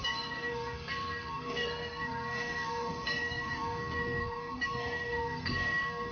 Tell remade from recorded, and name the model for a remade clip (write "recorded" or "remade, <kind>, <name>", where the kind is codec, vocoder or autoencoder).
remade, codec, SNAC